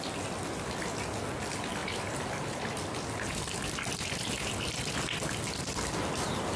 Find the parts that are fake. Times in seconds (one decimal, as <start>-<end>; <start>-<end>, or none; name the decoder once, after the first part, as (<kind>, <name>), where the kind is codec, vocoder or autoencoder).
none